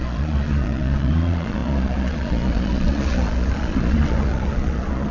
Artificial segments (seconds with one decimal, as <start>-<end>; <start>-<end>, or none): 0.0-5.1